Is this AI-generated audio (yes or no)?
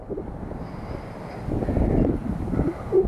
no